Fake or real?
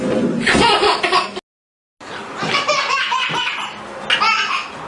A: real